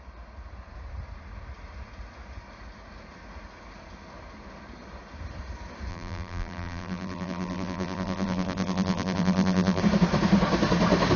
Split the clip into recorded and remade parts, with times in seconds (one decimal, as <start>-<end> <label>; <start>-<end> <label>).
0.0-5.9 recorded; 5.9-9.8 remade; 9.8-11.2 recorded